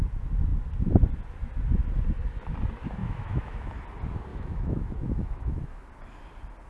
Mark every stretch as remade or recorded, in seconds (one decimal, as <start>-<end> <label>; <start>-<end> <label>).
0.0-3.0 recorded; 3.0-3.7 remade; 3.7-4.3 recorded; 4.3-5.8 remade; 5.8-6.7 recorded